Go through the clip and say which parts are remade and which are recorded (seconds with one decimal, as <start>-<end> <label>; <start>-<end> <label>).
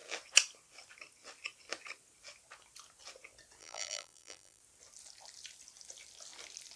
0.0-3.6 recorded; 3.6-4.6 remade; 4.6-6.8 recorded